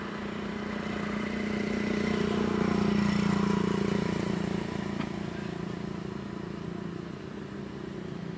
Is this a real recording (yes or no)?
yes